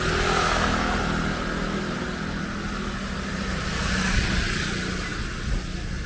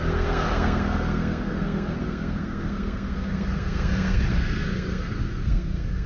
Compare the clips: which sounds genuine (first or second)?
first